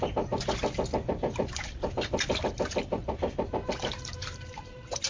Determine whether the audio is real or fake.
real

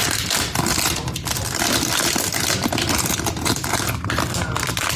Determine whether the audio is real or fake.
real